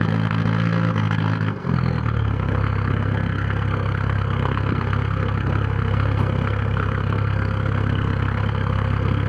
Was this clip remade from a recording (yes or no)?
yes